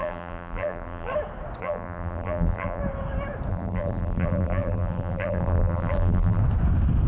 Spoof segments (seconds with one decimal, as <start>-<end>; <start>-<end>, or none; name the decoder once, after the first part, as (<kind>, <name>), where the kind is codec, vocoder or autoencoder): 0.0-1.1 (vocoder, BigVGAN v2); 1.6-2.8; 3.5-6.4